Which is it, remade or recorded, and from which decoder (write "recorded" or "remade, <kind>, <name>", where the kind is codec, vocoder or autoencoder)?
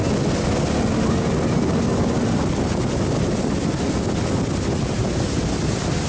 recorded